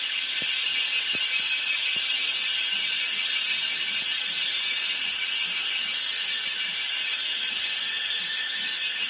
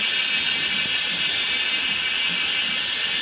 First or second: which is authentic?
second